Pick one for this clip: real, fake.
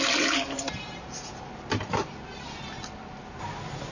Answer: real